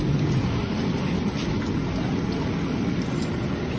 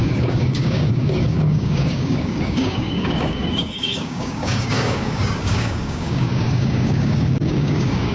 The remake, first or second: second